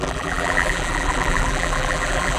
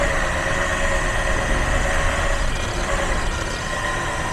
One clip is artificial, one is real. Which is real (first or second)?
second